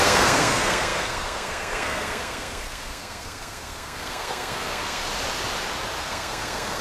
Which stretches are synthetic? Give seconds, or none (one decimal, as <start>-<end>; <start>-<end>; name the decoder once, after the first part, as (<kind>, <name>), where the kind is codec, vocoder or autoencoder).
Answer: 0.0-5.0 (codec, SNAC); 6.0-6.8

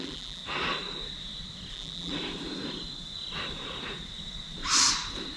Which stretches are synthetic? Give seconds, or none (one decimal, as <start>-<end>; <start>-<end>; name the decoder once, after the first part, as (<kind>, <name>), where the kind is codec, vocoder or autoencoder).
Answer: 0.0-0.4 (vocoder, BigVGAN v2); 1.7-2.1

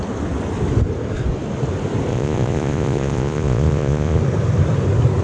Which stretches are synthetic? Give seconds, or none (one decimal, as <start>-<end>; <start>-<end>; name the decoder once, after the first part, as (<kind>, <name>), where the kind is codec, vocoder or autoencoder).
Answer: 2.1-4.2 (vocoder, Vocos)

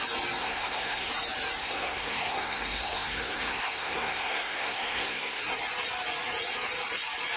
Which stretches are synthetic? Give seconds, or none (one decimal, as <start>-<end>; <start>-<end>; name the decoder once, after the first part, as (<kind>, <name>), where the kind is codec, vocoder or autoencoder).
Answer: 0.4-1.1 (codec, SNAC); 1.6-5.4

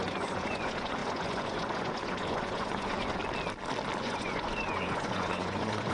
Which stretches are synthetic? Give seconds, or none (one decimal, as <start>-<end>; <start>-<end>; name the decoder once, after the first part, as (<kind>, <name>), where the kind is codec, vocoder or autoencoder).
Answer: 0.0-3.2 (vocoder, Vocos); 4.0-5.9